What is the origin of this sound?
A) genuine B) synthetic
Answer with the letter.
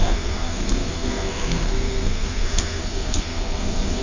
B